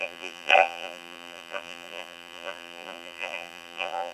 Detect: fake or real fake